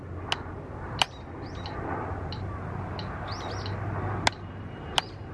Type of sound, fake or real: real